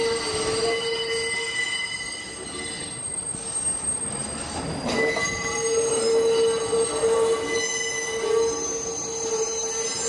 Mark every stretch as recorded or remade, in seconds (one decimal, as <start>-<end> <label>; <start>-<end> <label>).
0.0-10.1 recorded